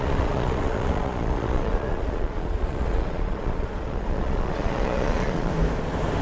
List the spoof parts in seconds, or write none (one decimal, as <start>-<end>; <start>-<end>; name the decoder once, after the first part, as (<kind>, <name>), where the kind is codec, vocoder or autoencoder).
0.0-5.5 (vocoder, Vocos)